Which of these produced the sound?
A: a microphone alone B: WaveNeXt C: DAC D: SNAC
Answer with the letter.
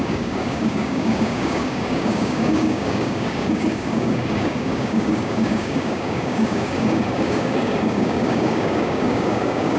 C